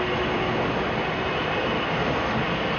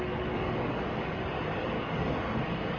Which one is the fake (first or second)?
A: second